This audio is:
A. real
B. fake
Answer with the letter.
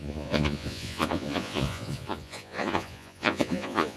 B